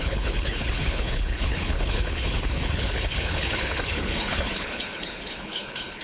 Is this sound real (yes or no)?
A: no